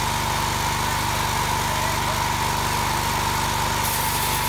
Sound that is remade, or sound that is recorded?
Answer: recorded